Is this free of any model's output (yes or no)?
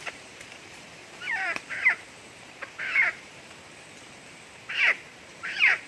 no